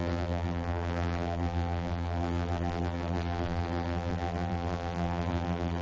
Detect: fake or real fake